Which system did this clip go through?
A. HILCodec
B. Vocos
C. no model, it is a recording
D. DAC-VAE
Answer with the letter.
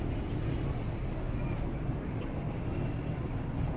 C